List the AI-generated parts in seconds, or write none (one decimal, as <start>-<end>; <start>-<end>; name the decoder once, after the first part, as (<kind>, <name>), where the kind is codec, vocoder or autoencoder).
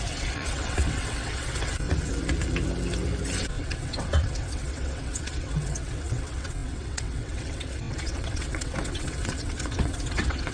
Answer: 0.0-2.1 (vocoder, WaveNeXt); 3.4-10.5